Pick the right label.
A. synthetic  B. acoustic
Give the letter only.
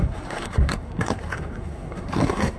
A